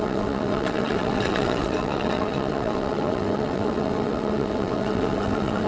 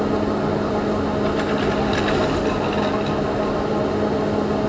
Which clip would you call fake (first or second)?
first